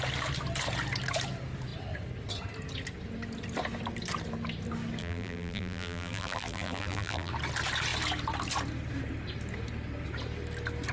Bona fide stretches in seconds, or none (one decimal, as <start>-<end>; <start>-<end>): 0.0-5.0; 7.3-10.9